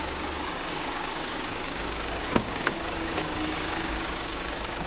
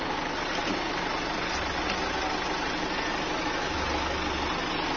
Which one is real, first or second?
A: second